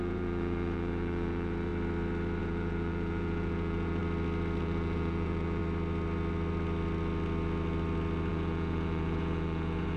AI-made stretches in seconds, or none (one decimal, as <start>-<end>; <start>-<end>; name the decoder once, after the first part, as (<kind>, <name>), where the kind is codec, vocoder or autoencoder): 0.0-1.7 (vocoder, Vocos); 2.4-4.0; 4.6-5.6; 8.3-10.0